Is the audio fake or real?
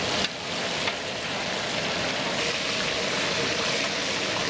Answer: real